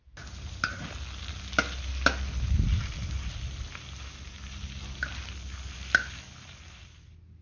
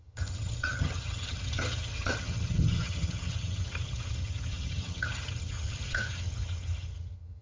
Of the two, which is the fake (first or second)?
second